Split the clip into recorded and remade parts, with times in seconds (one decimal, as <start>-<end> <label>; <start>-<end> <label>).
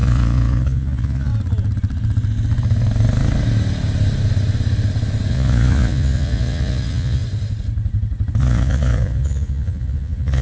0.0-1.3 remade; 1.3-5.3 recorded; 5.3-7.2 remade; 7.2-8.4 recorded; 8.4-10.4 remade